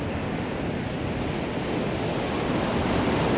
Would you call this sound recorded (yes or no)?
yes